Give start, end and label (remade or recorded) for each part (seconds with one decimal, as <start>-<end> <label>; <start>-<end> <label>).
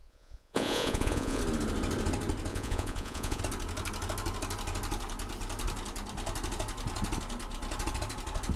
0.0-1.4 remade; 1.4-2.5 recorded; 2.5-3.4 remade; 3.4-8.6 recorded